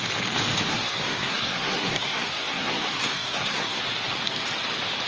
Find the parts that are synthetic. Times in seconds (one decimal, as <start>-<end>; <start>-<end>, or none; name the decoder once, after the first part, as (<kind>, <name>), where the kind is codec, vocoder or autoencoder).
0.7-3.8 (codec, SNAC)